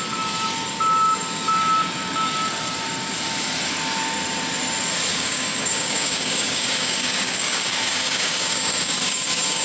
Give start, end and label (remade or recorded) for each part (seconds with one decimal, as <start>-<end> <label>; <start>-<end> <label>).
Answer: 0.0-5.1 recorded; 5.1-9.6 remade